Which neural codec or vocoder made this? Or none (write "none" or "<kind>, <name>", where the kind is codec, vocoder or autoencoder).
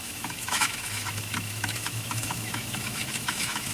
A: autoencoder, DAC-VAE